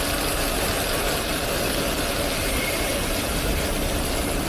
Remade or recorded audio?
recorded